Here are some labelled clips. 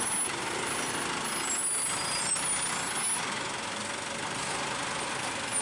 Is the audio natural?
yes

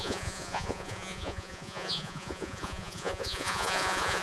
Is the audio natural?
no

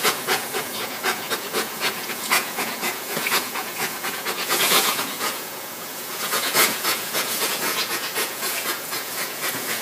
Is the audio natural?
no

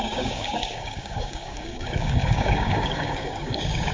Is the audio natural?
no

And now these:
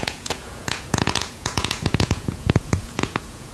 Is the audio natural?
no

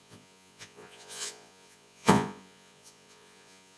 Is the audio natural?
no